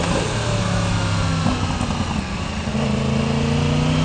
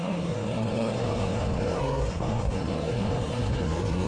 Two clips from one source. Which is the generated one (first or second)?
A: second